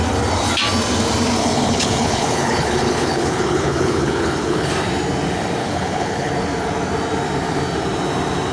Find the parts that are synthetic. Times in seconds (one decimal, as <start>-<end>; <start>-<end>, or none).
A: 1.4-4.7; 5.6-6.3